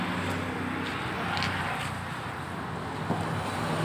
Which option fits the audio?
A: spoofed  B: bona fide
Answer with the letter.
B